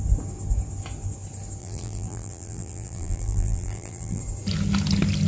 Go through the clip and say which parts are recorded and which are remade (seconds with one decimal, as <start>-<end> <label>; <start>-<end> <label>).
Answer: 0.0-1.6 recorded; 1.6-4.2 remade; 4.2-5.3 recorded